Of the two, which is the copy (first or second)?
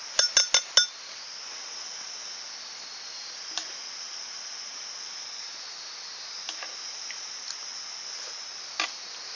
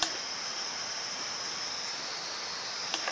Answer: second